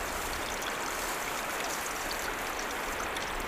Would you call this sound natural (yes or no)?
yes